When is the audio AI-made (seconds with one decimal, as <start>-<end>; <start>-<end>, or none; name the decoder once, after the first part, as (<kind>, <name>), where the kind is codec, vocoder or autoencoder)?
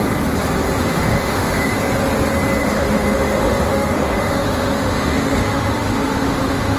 0.8-1.7 (autoencoder, DAC-VAE); 2.6-6.8